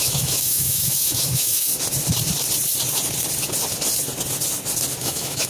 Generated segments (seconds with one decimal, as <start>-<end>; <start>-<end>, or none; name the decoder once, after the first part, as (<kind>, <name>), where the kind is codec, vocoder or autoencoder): 0.0-1.7 (autoencoder, DAC-VAE); 5.0-5.5